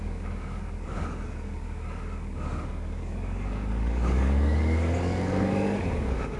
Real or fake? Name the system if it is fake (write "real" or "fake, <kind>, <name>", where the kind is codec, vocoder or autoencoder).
fake, codec, DAC